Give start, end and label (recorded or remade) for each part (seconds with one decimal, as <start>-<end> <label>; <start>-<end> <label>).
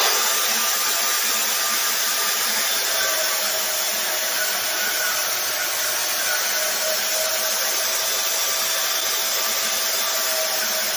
0.0-2.1 recorded; 2.1-5.2 remade; 5.2-11.0 recorded